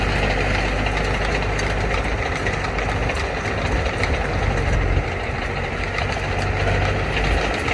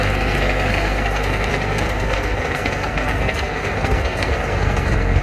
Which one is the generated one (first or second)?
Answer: second